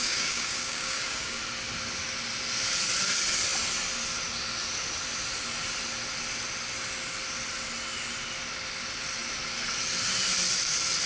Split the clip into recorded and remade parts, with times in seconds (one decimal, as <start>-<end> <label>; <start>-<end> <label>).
0.0-1.4 remade; 1.4-11.1 recorded